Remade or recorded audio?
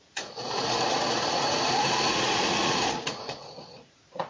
remade